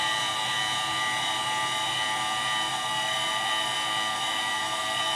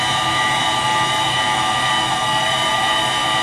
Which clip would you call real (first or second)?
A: first